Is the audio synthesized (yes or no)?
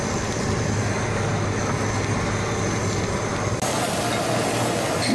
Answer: no